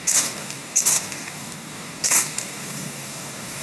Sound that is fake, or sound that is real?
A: fake